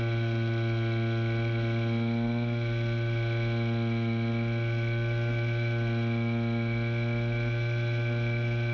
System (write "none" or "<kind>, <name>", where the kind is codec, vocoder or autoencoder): none